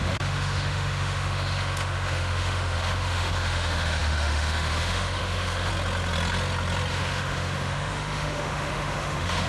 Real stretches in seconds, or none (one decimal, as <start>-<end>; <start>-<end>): 5.7-6.9